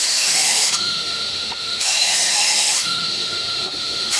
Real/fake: fake